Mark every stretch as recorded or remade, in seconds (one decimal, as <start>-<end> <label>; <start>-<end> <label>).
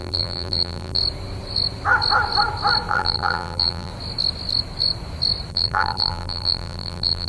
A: 0.0-1.0 remade; 1.0-2.9 recorded; 2.9-3.9 remade; 3.9-5.5 recorded; 5.5-7.3 remade